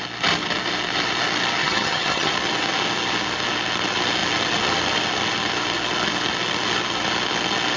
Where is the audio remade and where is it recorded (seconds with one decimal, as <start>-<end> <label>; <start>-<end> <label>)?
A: 0.0-1.6 recorded; 1.6-2.3 remade; 2.3-7.8 recorded